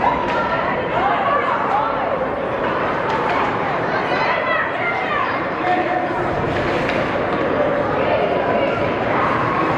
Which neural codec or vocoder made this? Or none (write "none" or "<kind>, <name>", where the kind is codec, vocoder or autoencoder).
vocoder, BigVGAN v2